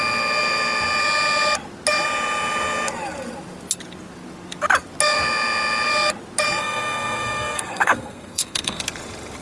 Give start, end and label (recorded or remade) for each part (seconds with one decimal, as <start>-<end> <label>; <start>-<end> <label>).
0.0-6.6 recorded; 6.6-8.8 remade; 8.8-9.4 recorded